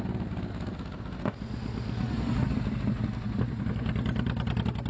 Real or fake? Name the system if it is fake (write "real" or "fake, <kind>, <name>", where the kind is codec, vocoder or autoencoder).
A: real